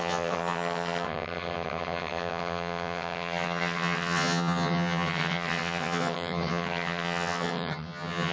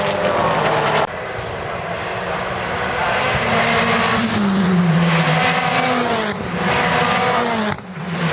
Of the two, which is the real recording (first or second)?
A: second